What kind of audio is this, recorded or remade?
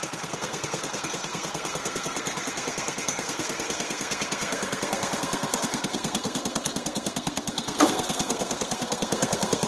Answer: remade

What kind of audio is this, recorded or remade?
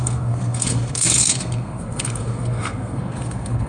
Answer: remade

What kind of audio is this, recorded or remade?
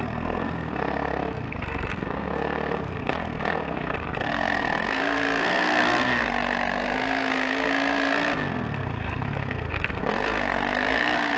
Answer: remade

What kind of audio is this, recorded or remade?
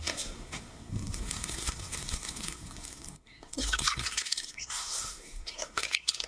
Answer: remade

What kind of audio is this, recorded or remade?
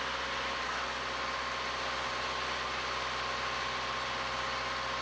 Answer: recorded